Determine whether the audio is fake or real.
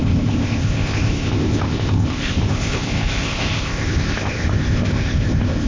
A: fake